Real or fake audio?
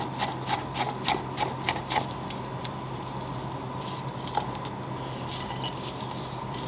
real